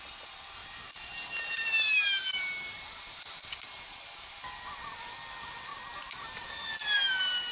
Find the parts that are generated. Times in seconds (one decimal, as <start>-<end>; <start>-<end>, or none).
0.6-2.4